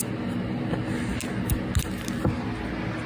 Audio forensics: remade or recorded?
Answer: recorded